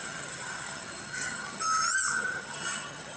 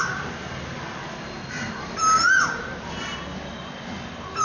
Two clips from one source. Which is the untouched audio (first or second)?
second